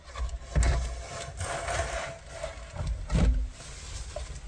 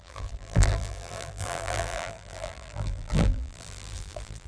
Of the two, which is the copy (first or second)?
second